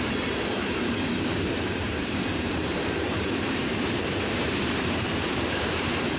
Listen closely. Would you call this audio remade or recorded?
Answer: remade